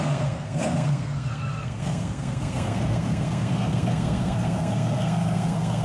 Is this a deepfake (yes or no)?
yes